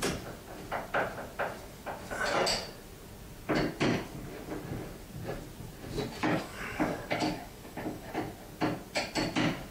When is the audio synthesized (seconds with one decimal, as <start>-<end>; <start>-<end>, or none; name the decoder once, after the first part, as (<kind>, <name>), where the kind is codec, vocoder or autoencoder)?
6.2-8.1 (codec, DAC)